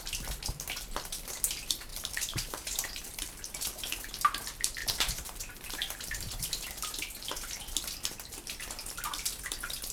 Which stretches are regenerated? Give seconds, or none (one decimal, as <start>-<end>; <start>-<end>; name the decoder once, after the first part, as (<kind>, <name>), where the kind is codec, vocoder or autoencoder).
1.9-4.1 (vocoder, BigVGAN v2); 4.8-6.4